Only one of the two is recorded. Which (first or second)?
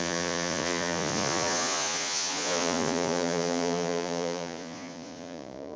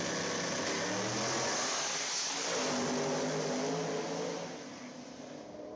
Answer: second